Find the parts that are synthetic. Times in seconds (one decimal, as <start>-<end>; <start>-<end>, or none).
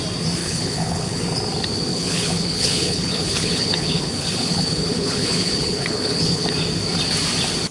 0.4-1.2; 1.9-6.5